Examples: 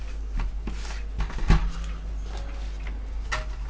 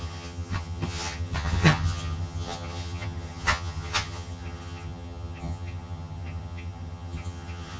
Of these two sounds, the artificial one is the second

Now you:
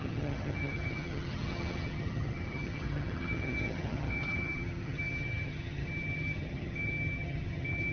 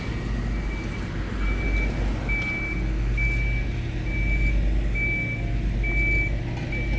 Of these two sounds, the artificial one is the first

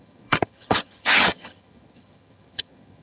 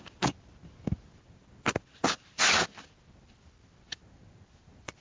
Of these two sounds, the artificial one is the first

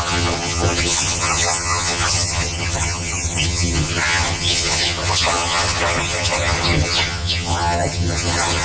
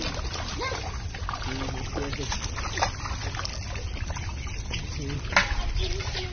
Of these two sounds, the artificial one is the first